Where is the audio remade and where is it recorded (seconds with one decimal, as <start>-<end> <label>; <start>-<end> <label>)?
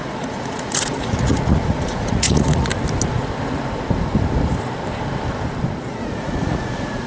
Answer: 0.0-2.7 remade; 2.7-5.9 recorded; 5.9-7.1 remade